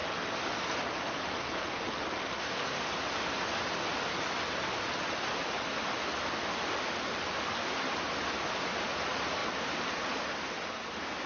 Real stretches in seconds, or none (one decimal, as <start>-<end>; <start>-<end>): 0.0-11.3